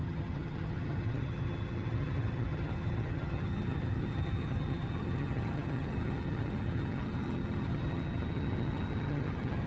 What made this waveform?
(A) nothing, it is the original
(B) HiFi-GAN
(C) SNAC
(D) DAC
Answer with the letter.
B